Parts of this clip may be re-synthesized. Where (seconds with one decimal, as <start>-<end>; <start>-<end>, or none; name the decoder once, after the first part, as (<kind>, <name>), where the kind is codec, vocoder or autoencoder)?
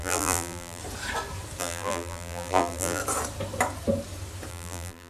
0.0-0.8 (vocoder, BigVGAN v2); 1.6-3.0; 4.5-5.1